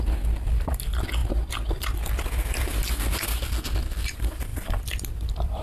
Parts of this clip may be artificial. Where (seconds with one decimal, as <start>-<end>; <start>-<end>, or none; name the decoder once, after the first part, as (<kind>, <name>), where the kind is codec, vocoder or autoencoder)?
4.5-5.6 (vocoder, BigVGAN v2)